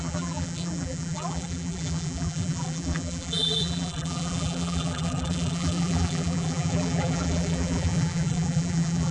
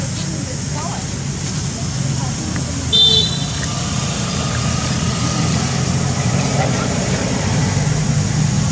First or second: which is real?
second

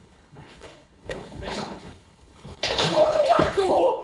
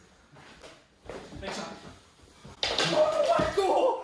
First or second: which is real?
second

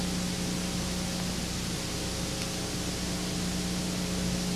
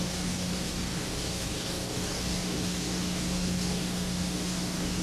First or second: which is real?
first